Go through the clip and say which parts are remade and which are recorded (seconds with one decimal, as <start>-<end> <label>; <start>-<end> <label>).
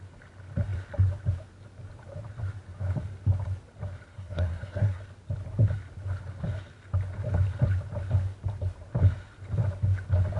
0.0-4.1 recorded; 4.1-5.0 remade; 5.0-10.4 recorded